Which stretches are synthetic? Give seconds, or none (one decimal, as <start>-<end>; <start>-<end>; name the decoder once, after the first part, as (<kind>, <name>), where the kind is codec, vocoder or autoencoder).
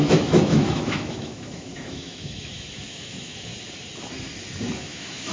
0.0-3.5 (autoencoder, DAC-VAE); 4.8-5.3